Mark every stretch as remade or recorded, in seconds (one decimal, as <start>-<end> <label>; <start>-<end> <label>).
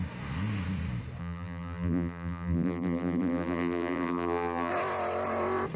0.0-1.2 recorded; 1.2-4.7 remade; 4.7-5.8 recorded